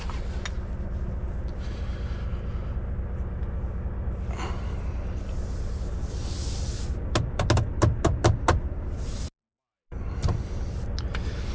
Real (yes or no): yes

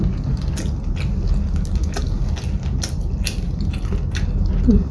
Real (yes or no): yes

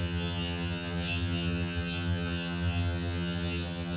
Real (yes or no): no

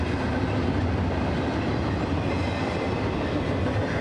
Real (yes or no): yes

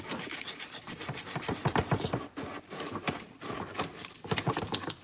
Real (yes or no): no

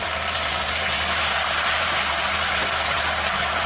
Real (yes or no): no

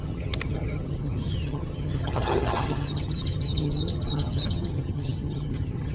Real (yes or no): no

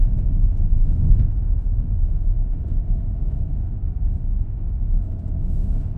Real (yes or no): no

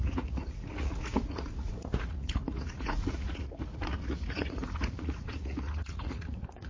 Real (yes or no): no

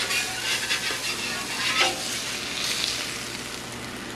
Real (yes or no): yes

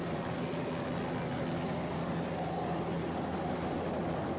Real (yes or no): yes